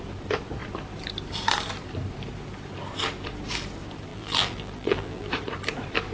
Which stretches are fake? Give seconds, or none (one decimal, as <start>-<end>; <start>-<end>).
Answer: 4.1-5.3

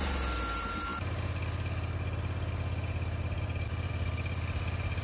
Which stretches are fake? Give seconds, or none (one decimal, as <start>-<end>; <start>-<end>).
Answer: none

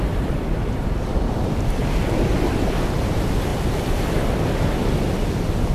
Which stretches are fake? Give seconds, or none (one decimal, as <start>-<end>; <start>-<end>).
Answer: 0.0-1.8; 2.5-3.5; 5.3-5.7

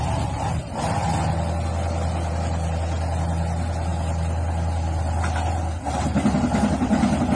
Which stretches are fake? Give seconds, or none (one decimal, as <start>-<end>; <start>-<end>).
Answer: none

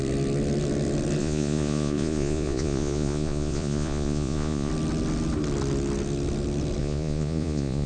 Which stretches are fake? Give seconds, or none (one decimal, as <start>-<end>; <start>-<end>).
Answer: 1.2-4.7; 6.8-7.9

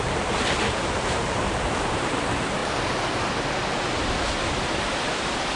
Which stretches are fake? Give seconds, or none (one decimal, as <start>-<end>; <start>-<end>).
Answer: 0.0-2.6; 4.8-5.6

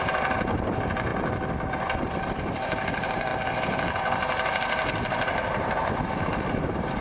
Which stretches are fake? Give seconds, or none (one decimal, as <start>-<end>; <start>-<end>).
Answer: 0.0-1.1; 1.7-3.3; 6.2-7.0